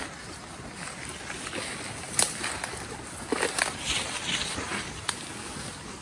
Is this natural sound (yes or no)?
yes